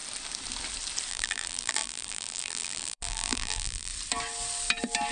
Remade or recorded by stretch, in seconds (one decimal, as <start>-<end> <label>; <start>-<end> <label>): 0.0-1.1 recorded; 1.1-3.9 remade; 3.9-5.1 recorded